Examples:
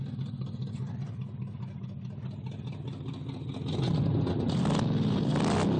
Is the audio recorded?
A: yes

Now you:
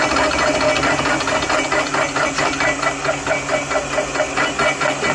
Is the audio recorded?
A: yes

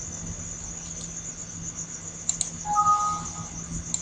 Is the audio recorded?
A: yes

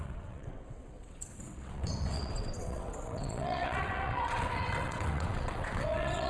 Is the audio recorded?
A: no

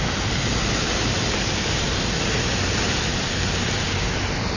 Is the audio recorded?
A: yes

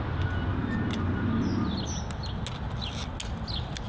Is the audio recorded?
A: yes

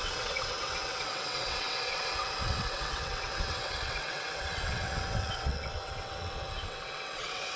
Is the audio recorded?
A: no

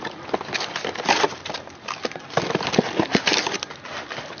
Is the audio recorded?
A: yes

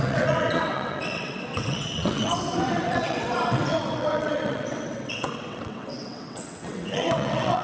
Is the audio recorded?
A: no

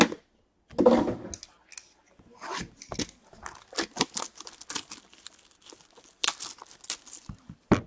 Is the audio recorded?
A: yes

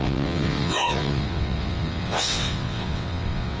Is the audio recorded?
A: no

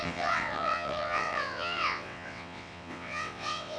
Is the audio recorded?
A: no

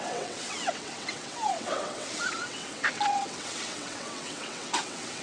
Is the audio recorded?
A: no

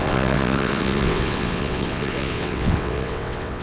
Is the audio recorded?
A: no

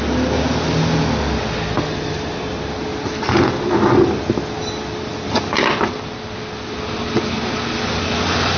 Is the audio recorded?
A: yes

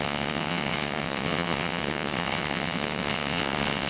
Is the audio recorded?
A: no